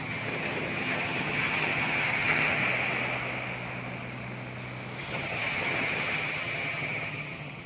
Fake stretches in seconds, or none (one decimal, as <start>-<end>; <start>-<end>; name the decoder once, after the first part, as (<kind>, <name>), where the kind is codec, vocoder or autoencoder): 0.0-2.6 (vocoder, HiFi-GAN); 5.0-7.7